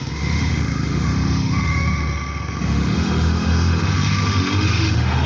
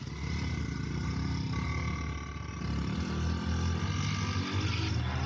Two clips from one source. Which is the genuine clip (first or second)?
second